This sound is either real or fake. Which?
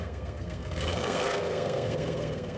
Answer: fake